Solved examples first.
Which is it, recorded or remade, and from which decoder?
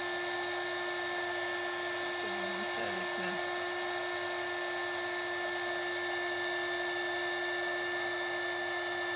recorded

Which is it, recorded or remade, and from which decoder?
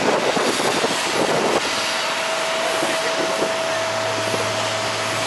recorded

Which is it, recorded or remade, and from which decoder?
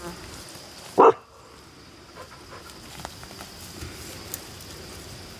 recorded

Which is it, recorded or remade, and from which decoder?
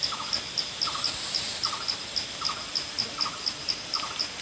recorded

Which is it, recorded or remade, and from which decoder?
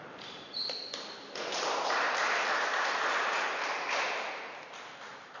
remade, vocoder, BigVGAN v2